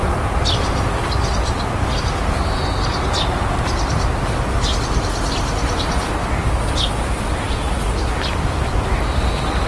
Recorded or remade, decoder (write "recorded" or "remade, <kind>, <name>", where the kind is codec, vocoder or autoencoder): recorded